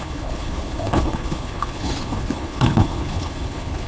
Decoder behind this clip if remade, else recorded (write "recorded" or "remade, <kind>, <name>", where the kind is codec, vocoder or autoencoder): remade, codec, HILCodec